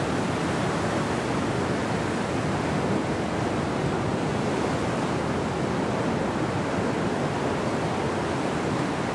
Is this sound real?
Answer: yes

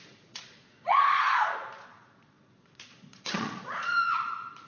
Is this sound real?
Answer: no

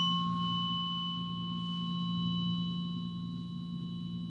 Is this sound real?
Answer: yes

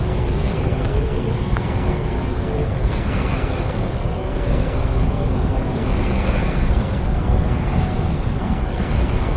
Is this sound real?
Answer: no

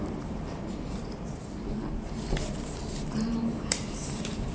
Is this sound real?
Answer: no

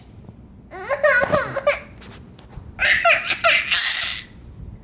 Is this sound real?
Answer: yes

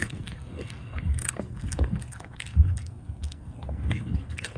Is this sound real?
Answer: no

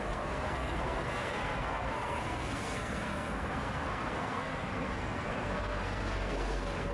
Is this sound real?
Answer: no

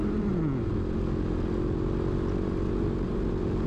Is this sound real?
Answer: yes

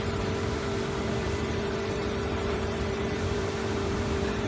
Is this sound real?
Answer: no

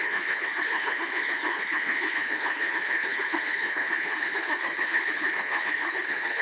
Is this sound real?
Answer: no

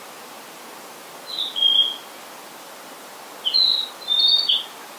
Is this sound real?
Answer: yes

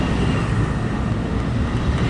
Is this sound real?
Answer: yes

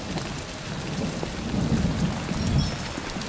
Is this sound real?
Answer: yes